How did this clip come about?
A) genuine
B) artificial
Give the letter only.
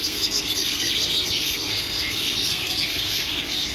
B